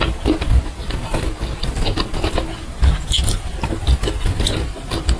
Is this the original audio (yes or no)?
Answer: yes